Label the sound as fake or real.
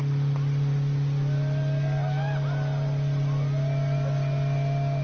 real